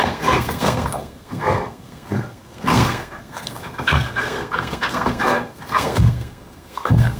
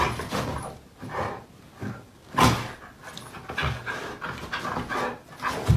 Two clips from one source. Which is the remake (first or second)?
first